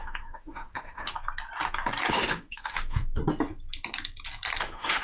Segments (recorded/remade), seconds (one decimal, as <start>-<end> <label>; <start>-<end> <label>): 0.0-1.1 remade; 1.1-2.1 recorded; 2.1-3.2 remade; 3.2-4.6 recorded; 4.6-5.0 remade